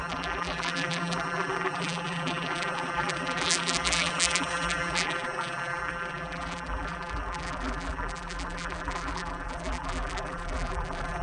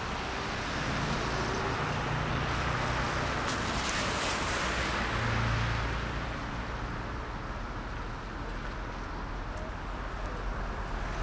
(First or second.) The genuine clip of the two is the second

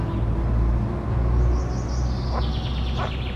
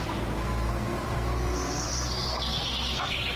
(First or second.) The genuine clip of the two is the first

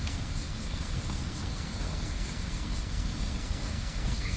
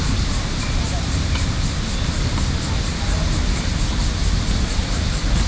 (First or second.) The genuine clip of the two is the second